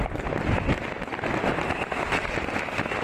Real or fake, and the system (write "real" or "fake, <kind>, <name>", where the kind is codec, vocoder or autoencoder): real